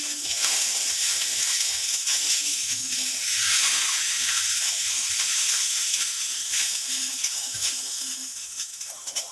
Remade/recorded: remade